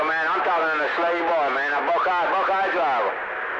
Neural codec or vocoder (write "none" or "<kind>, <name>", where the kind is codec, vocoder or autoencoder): none